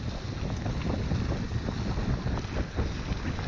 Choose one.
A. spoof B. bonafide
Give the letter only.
B